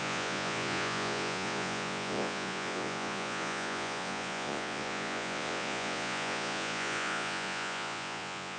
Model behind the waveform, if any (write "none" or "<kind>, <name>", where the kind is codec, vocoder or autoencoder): vocoder, Vocos